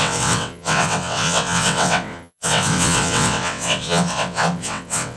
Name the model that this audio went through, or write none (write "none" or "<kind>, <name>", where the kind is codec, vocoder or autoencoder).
vocoder, WaveNeXt